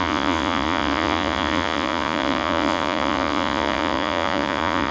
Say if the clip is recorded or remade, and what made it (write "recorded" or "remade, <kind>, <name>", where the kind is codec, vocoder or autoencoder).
remade, vocoder, Vocos